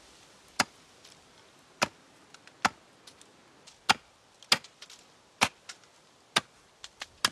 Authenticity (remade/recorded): recorded